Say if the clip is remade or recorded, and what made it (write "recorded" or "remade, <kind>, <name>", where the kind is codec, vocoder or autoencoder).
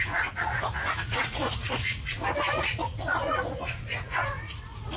remade, vocoder, Vocos